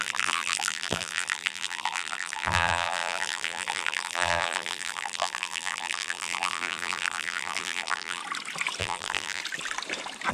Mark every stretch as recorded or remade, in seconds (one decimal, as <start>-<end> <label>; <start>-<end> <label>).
0.0-8.2 remade; 8.2-8.8 recorded; 8.8-9.4 remade; 9.4-10.3 recorded